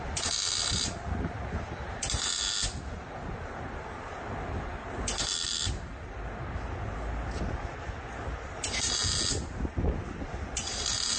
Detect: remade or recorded recorded